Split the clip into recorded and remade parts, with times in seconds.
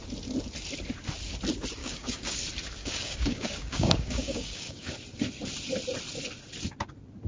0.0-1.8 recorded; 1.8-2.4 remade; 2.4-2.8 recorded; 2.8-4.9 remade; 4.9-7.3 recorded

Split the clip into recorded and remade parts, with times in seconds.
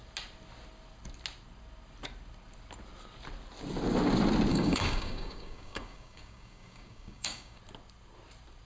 0.0-4.5 recorded; 4.5-7.6 remade; 7.6-8.7 recorded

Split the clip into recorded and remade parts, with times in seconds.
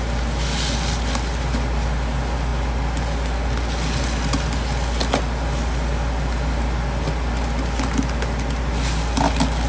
0.0-9.7 recorded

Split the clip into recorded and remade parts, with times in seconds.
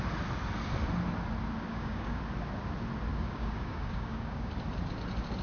0.0-1.7 recorded; 1.7-2.2 remade; 2.2-3.1 recorded; 3.1-4.5 remade; 4.5-5.4 recorded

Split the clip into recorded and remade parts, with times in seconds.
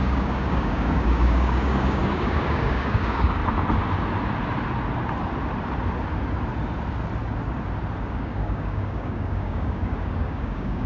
0.0-3.4 remade; 3.4-8.1 recorded; 8.1-10.9 remade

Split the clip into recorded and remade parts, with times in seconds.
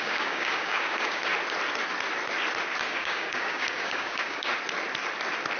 0.0-1.3 remade; 1.3-2.8 recorded; 2.8-4.5 remade; 4.5-5.6 recorded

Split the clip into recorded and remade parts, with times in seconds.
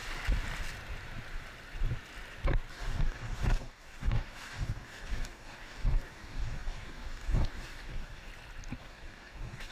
0.0-2.7 recorded; 2.7-8.3 remade; 8.3-8.8 recorded; 8.8-9.7 remade